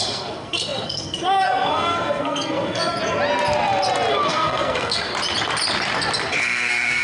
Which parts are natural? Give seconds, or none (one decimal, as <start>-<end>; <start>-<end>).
2.9-4.1; 5.1-6.4